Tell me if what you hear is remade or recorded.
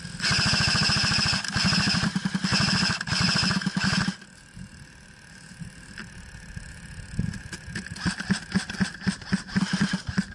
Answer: recorded